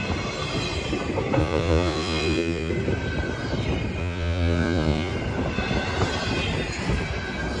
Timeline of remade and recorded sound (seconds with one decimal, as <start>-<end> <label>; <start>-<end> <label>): 0.0-1.4 recorded; 1.4-2.7 remade; 2.7-4.0 recorded; 4.0-5.1 remade; 5.1-7.6 recorded